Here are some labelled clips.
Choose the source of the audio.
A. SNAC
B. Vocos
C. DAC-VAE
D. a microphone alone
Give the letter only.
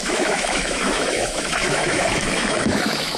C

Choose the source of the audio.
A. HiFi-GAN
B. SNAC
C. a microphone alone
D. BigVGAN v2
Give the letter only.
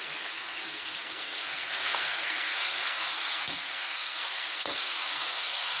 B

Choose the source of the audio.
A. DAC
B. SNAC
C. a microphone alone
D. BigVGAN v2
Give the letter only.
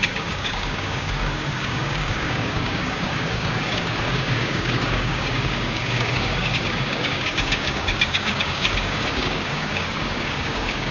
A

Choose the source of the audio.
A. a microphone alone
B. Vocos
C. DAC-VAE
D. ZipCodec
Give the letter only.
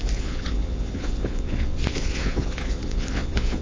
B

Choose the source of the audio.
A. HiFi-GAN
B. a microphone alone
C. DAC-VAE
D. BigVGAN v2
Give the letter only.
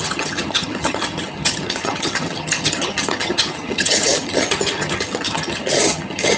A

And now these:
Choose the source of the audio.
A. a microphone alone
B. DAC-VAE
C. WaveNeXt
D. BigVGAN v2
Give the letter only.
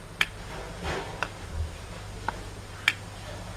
A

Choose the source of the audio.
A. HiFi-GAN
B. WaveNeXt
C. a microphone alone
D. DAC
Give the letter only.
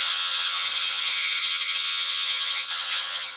A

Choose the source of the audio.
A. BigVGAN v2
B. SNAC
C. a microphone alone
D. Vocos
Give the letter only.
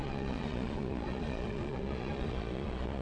D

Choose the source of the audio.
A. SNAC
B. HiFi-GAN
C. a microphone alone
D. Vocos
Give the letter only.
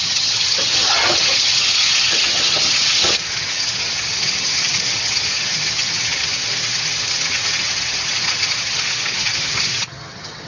B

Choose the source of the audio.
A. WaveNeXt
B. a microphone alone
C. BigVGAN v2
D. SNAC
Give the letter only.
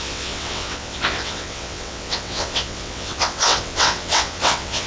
A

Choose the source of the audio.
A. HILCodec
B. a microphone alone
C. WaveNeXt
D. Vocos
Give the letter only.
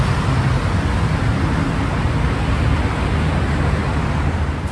B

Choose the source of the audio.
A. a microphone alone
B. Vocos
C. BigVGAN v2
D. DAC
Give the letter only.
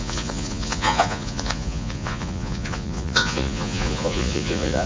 B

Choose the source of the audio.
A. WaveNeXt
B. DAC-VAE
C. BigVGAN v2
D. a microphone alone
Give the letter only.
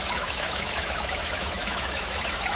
B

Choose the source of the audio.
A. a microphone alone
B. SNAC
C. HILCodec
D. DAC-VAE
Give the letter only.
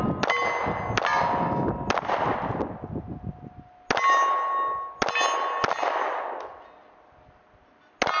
A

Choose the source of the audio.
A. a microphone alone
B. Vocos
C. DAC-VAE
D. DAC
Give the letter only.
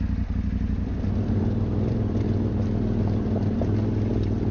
A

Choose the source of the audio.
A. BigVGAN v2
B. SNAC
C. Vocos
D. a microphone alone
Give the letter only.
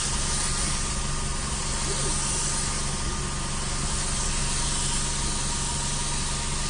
D